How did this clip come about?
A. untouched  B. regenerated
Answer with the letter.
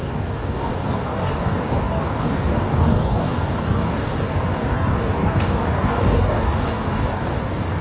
B